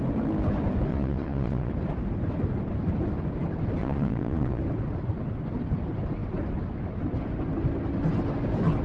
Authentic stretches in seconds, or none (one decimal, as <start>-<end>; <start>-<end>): 0.0-0.9; 1.7-3.8; 4.6-8.8